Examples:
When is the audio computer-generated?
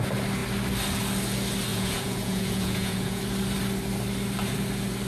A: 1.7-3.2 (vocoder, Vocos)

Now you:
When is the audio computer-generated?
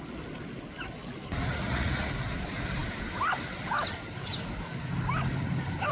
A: 1.4-2.1 (vocoder, Vocos)